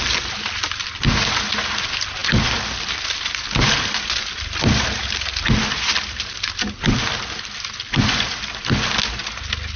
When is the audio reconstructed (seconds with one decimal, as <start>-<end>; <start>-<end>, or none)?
none